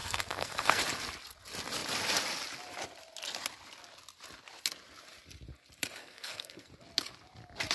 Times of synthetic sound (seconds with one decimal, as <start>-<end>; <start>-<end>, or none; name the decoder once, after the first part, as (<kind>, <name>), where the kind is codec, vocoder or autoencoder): 0.0-0.8 (codec, SNAC); 6.0-6.7